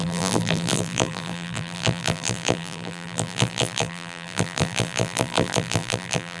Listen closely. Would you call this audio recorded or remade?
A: remade